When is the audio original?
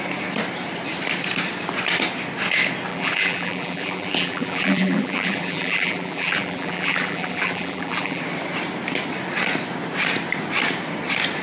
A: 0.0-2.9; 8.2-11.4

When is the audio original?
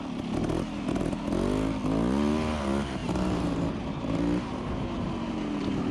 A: 0.0-0.4; 1.2-3.0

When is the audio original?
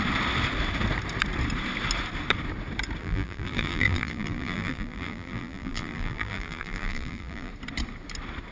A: 0.0-3.0; 7.5-8.5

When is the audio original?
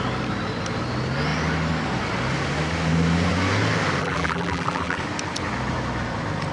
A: 0.0-4.0; 5.0-6.5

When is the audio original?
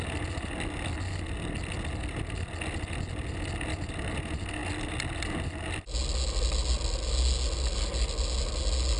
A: 0.0-9.0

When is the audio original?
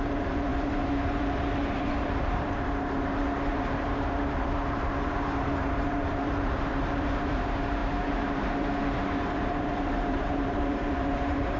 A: none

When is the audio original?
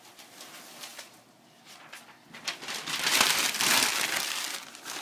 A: 0.0-0.9; 3.9-5.0